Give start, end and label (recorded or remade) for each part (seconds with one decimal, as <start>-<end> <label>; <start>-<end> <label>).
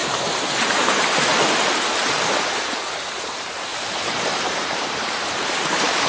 0.0-0.8 recorded; 0.8-1.3 remade; 1.3-3.0 recorded; 3.0-6.1 remade